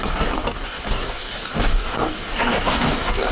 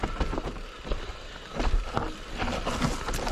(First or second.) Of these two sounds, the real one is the second